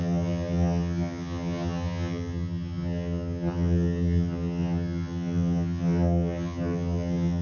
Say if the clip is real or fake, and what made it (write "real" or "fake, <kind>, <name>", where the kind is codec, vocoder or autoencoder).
fake, vocoder, HiFi-GAN